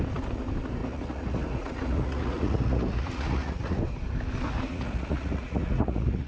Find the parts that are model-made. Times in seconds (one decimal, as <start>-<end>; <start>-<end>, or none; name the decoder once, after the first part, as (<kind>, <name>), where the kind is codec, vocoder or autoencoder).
0.8-3.8 (vocoder, Vocos); 4.7-6.3